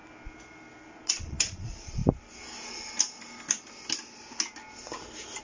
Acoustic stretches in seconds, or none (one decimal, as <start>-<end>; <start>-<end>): 0.0-0.9; 2.0-5.4